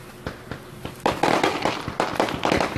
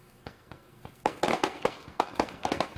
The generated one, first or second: second